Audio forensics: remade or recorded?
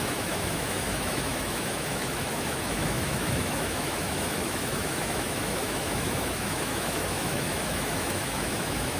remade